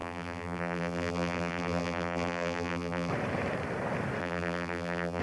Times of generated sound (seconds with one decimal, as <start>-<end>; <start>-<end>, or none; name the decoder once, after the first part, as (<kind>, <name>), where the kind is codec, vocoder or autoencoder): 0.0-3.1 (vocoder, BigVGAN v2); 4.2-5.2